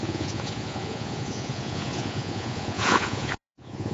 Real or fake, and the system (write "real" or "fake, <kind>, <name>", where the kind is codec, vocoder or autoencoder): fake, vocoder, Vocos